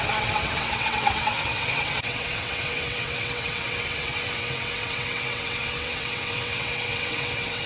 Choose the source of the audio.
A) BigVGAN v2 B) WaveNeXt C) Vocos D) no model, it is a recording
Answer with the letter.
B